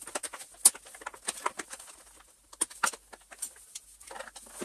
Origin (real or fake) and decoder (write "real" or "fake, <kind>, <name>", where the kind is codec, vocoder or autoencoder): real